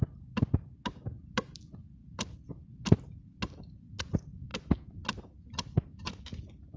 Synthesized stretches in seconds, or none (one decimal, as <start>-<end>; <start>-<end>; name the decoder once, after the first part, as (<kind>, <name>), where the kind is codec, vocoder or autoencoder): none